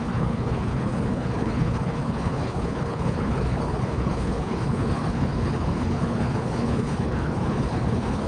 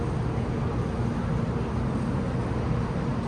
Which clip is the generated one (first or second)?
first